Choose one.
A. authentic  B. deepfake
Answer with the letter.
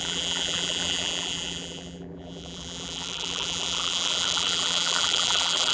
B